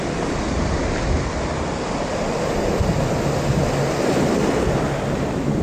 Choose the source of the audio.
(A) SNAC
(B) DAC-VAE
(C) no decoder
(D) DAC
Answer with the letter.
C